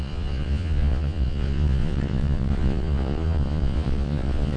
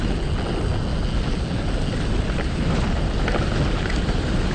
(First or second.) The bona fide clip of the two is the second